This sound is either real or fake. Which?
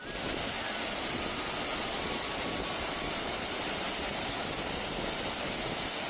real